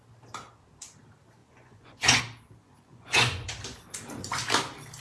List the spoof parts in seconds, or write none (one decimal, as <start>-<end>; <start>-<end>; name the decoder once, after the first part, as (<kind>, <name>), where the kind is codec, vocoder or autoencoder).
1.4-2.2 (vocoder, Vocos); 2.6-3.5